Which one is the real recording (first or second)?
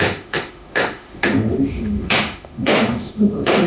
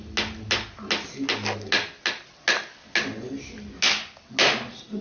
second